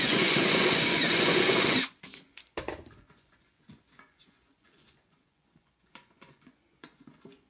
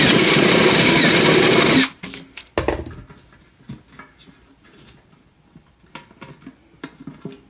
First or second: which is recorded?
second